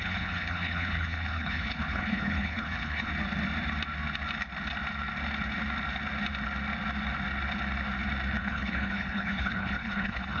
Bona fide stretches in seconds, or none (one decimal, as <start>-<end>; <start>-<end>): 3.1-8.4